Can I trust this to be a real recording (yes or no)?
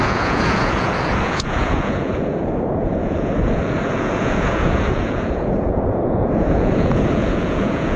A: no